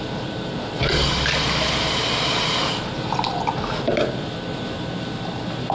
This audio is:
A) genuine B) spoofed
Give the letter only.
A